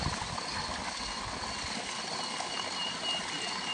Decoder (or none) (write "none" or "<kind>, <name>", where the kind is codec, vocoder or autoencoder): none